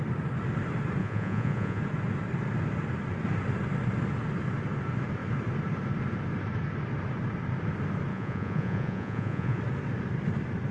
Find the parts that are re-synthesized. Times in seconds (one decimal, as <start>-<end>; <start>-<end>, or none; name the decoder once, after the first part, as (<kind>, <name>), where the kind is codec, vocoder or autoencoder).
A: 1.0-1.8 (vocoder, Vocos); 8.1-9.6